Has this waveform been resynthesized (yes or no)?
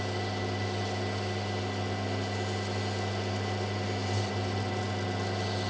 no